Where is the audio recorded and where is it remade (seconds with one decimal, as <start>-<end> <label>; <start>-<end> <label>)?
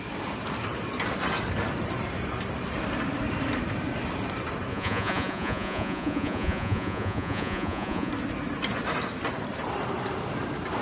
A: 0.0-4.7 recorded; 4.7-8.1 remade; 8.1-10.8 recorded